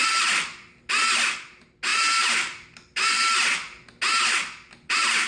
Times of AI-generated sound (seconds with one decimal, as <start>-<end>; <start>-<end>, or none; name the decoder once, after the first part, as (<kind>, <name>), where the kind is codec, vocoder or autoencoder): none